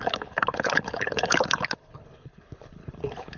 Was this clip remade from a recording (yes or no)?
yes